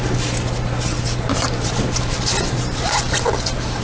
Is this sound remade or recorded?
recorded